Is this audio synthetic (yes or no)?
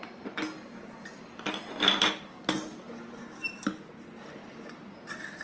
no